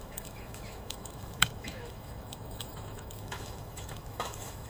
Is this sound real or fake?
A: fake